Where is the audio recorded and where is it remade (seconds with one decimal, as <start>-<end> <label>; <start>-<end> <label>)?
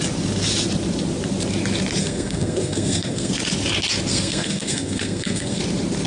0.0-2.0 recorded; 2.0-3.3 remade; 3.3-4.1 recorded; 4.1-5.6 remade; 5.6-6.1 recorded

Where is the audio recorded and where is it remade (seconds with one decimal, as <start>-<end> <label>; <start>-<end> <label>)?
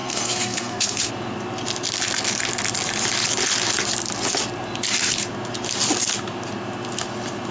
0.0-1.1 remade; 1.1-7.5 recorded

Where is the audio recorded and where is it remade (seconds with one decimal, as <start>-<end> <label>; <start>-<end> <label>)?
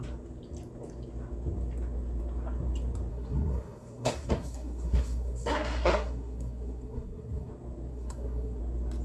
0.0-3.1 recorded; 3.1-7.5 remade; 7.5-7.9 recorded; 7.9-8.6 remade; 8.6-9.0 recorded